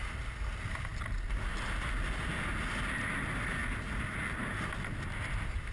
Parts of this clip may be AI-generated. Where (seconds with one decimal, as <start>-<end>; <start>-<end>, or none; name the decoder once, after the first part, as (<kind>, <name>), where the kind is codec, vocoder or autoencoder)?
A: none